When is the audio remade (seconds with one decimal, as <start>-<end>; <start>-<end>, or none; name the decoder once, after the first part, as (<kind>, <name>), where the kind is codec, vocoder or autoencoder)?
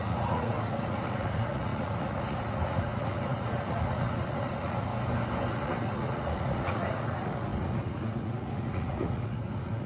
0.0-4.9 (vocoder, Vocos); 5.5-9.9